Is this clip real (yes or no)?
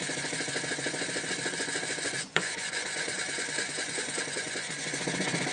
no